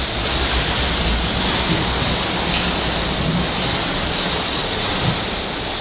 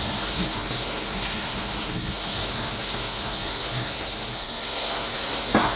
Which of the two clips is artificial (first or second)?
second